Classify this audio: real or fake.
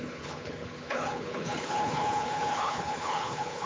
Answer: fake